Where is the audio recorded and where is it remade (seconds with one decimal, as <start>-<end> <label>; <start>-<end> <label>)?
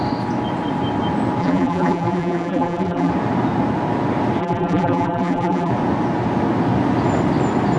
0.0-1.4 recorded; 1.4-3.1 remade; 3.1-4.4 recorded; 4.4-5.7 remade; 5.7-7.8 recorded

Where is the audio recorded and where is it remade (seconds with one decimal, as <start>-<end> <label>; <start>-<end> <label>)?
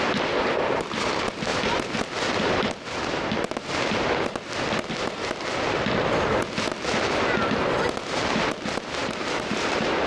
0.0-9.0 recorded; 9.0-10.1 remade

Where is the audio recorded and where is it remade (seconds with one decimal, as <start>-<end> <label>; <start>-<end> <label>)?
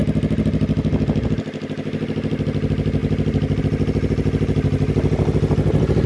0.0-6.1 recorded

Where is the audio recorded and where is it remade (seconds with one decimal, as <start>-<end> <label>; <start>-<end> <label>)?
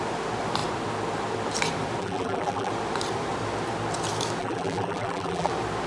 0.0-2.0 recorded; 2.0-2.7 remade; 2.7-4.4 recorded; 4.4-5.5 remade; 5.5-5.9 recorded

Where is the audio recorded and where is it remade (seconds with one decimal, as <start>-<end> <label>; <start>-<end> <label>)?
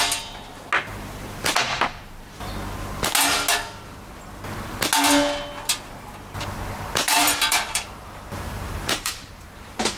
0.0-7.0 recorded; 7.0-9.5 remade; 9.5-10.0 recorded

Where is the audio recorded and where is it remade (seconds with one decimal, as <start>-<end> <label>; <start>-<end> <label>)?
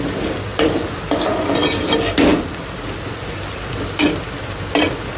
0.0-0.5 recorded; 0.5-1.0 remade; 1.0-2.3 recorded; 2.3-3.3 remade; 3.3-5.2 recorded